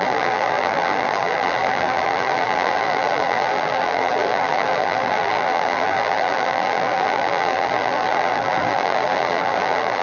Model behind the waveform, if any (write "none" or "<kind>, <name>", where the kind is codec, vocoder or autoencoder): vocoder, BigVGAN v2